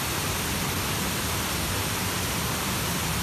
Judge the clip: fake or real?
real